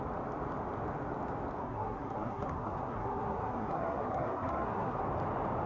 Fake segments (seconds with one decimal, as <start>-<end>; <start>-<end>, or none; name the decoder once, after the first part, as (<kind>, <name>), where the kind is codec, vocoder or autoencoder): 1.6-5.0 (codec, SNAC)